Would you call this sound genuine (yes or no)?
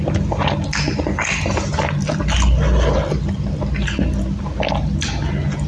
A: yes